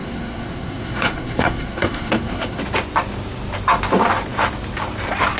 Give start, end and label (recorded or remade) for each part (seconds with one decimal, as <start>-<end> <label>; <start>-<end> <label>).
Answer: 0.0-2.6 remade; 2.6-5.4 recorded